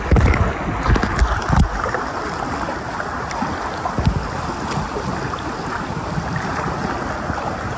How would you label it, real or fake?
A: real